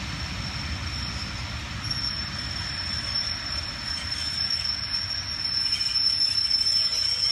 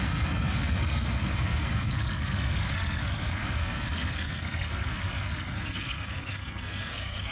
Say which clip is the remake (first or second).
second